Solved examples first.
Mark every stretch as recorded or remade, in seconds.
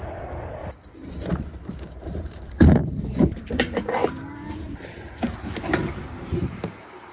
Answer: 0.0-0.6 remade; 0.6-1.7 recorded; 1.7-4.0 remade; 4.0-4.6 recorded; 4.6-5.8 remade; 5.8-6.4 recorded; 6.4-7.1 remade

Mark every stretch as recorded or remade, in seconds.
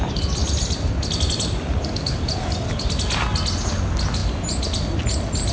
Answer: 0.0-5.5 recorded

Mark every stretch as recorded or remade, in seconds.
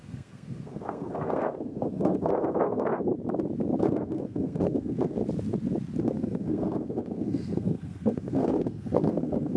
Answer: 0.0-3.1 remade; 3.1-3.8 recorded; 3.8-5.2 remade; 5.2-6.0 recorded; 6.0-9.6 remade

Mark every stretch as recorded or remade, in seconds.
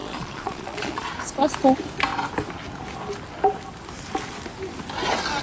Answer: 0.0-1.1 remade; 1.1-5.4 recorded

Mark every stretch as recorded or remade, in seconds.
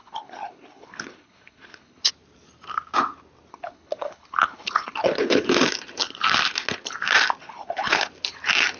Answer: 0.0-2.1 remade; 2.1-3.5 recorded; 3.5-5.5 remade; 5.5-7.4 recorded; 7.4-8.1 remade; 8.1-8.8 recorded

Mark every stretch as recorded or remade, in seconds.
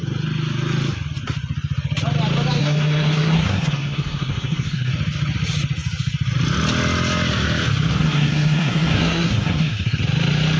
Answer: 0.0-2.6 recorded; 2.6-4.9 remade; 4.9-8.0 recorded; 8.0-10.0 remade; 10.0-10.6 recorded